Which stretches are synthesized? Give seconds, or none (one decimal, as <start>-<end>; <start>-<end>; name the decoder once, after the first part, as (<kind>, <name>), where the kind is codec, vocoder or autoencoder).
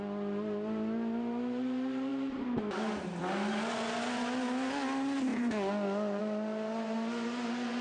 none